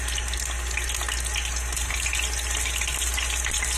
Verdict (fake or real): real